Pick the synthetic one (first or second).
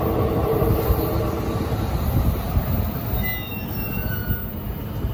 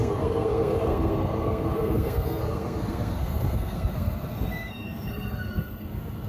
second